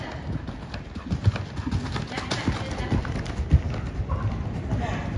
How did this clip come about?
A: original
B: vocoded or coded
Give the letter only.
A